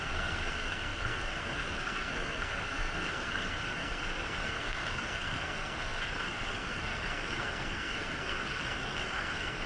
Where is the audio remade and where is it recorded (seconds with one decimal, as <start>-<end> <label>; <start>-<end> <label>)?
0.0-9.7 remade